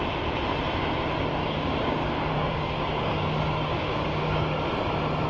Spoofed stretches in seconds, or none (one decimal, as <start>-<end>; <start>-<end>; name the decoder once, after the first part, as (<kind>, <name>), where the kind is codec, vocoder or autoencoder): 1.4-4.6 (codec, DAC)